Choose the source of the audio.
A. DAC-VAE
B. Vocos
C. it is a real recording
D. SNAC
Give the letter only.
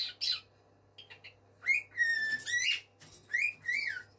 C